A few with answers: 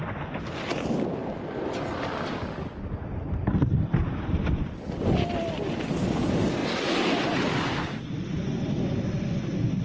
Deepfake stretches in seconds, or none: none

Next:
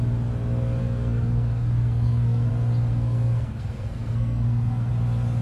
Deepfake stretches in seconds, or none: 0.8-2.5 (codec, SNAC); 2.9-4.9

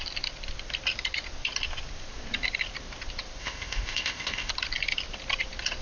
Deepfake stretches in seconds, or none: 3.4-4.5 (codec, ZipCodec)

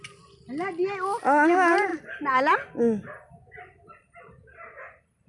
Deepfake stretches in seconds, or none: 1.9-4.2 (vocoder, BigVGAN v2)

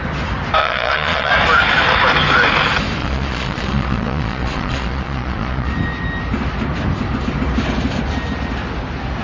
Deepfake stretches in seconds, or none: 0.6-1.3 (vocoder, Vocos); 3.0-5.7

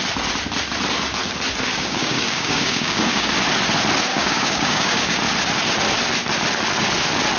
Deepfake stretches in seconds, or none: 1.7-3.3 (codec, DAC); 4.1-5.2